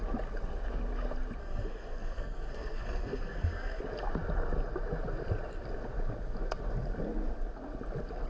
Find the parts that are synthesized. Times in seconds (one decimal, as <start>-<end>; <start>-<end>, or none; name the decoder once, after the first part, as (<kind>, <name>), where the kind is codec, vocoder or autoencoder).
1.4-3.8 (codec, SNAC)